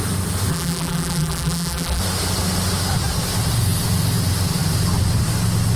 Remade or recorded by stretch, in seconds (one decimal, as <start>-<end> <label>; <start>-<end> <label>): 0.0-0.5 recorded; 0.5-2.0 remade; 2.0-5.8 recorded

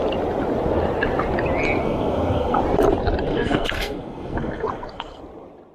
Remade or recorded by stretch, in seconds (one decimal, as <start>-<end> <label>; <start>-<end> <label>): 0.0-1.8 recorded; 1.8-2.6 remade; 2.6-3.3 recorded; 3.3-5.2 remade; 5.2-5.7 recorded